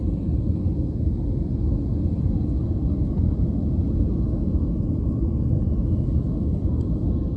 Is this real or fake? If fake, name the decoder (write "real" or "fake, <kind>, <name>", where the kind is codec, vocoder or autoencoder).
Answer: real